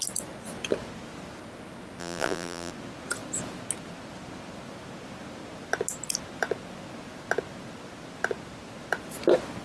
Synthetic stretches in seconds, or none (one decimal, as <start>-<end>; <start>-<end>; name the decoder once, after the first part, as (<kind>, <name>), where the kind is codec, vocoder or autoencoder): 2.0-2.7 (vocoder, BigVGAN v2)